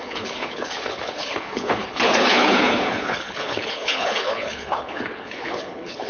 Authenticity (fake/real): fake